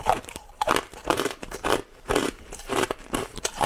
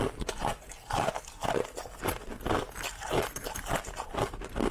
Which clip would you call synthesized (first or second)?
first